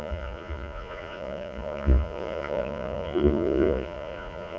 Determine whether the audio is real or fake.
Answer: fake